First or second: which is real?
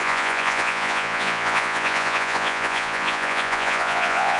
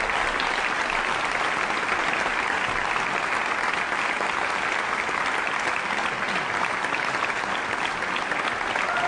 second